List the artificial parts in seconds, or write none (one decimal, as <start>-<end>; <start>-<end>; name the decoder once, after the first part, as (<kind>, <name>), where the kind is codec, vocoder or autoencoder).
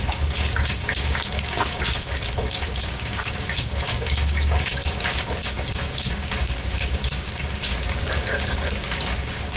0.0-9.6 (codec, DAC)